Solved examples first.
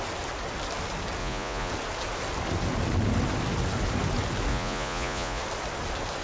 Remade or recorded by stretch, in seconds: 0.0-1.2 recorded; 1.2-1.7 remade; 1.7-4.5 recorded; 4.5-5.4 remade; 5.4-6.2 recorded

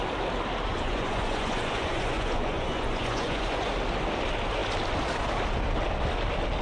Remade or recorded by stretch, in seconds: 0.0-0.7 recorded; 0.7-3.7 remade; 3.7-6.6 recorded

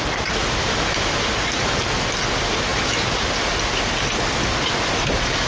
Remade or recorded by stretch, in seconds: 0.0-5.5 recorded

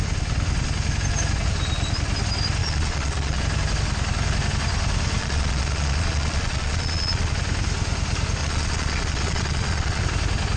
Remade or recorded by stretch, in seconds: 0.0-2.6 recorded; 2.6-3.4 remade; 3.4-5.2 recorded; 5.2-7.3 remade; 7.3-8.4 recorded; 8.4-10.0 remade; 10.0-10.6 recorded

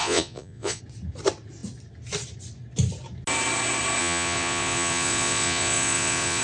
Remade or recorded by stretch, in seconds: 0.0-0.8 remade; 0.8-4.0 recorded; 4.0-6.4 remade

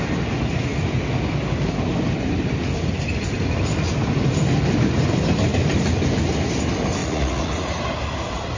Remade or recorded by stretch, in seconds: 0.0-7.0 recorded; 7.0-7.5 remade; 7.5-8.6 recorded

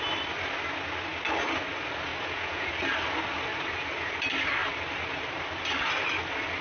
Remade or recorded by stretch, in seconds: 0.0-2.1 recorded; 2.1-2.7 remade; 2.7-6.6 recorded

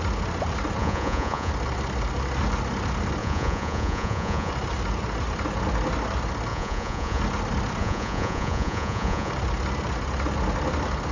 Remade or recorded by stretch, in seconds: 0.0-0.8 recorded; 0.8-1.5 remade; 1.5-3.2 recorded; 3.2-4.5 remade; 4.5-6.5 recorded; 6.5-7.2 remade; 7.2-7.8 recorded; 7.8-9.3 remade; 9.3-11.1 recorded